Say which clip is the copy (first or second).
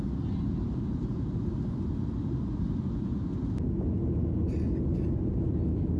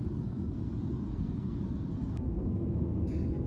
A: second